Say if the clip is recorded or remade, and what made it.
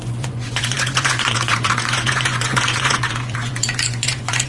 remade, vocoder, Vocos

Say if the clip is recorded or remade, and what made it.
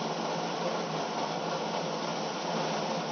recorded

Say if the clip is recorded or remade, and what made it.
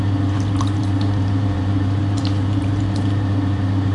remade, vocoder, BigVGAN v2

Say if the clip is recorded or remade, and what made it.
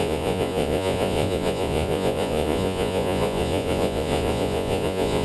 remade, vocoder, Vocos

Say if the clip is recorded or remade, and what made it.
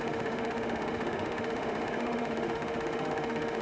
remade, autoencoder, DAC-VAE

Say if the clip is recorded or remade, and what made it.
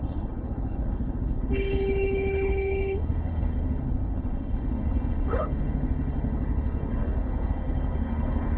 remade, codec, HILCodec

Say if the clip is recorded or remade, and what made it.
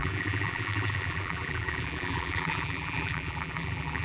remade, vocoder, BigVGAN v2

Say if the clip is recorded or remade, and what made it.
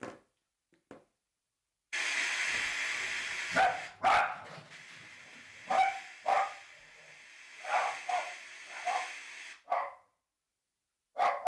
recorded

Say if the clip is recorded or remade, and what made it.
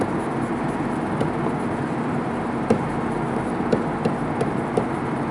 recorded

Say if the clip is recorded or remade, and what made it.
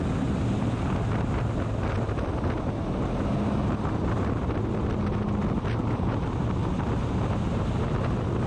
recorded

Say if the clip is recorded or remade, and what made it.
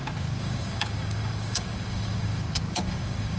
remade, codec, DAC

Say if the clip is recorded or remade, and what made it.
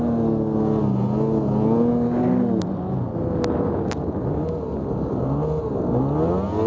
recorded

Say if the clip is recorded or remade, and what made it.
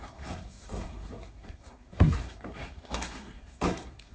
remade, codec, SNAC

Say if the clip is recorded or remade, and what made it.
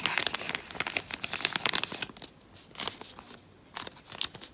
recorded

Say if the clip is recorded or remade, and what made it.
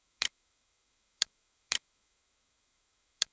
remade, autoencoder, DAC-VAE